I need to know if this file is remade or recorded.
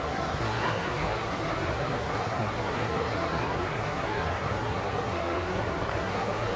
remade